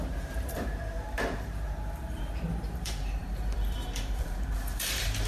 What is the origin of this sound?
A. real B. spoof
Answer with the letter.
B